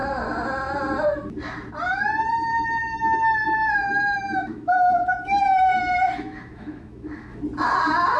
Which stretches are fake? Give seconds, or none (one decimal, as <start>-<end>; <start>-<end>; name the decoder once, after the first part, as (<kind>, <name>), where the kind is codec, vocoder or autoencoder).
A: 2.5-7.4 (autoencoder, DAC-VAE)